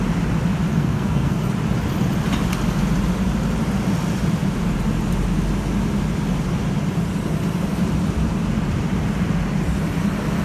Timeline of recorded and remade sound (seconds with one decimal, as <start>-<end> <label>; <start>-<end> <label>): 0.0-0.7 recorded; 0.7-1.5 remade; 1.5-10.4 recorded